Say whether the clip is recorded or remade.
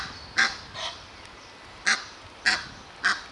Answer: recorded